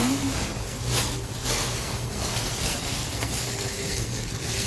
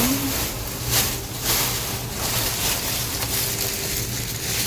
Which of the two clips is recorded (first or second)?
second